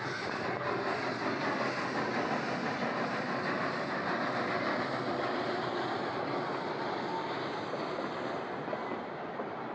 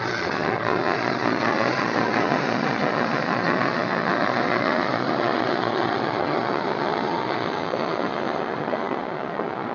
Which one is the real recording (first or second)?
first